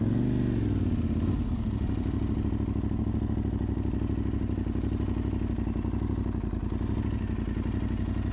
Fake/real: real